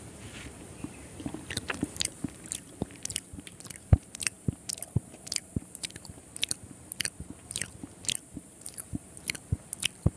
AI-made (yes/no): yes